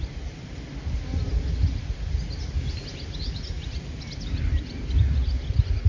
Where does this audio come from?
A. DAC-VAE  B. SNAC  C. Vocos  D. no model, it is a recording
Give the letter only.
D